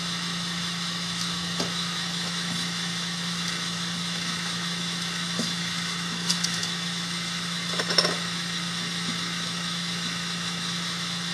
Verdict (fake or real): fake